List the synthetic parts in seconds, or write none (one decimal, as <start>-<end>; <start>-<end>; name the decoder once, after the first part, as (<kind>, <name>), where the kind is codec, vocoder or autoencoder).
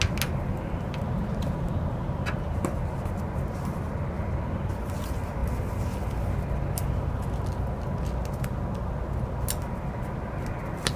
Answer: none